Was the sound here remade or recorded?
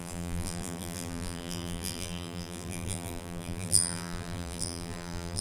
remade